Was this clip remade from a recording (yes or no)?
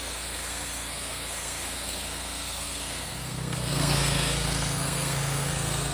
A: yes